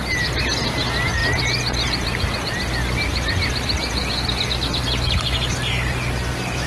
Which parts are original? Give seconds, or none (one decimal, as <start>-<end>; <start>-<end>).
0.0-6.7